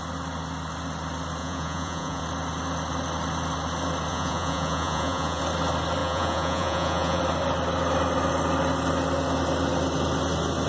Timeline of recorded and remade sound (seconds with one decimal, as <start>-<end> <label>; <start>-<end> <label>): 0.0-1.4 recorded; 1.4-2.2 remade; 2.2-4.1 recorded; 4.1-5.4 remade; 5.4-6.0 recorded; 6.0-7.2 remade; 7.2-10.7 recorded